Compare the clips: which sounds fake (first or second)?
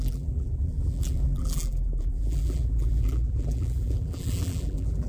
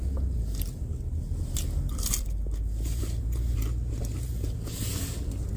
first